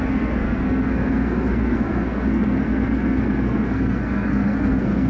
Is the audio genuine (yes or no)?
no